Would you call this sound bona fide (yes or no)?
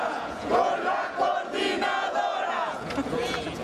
no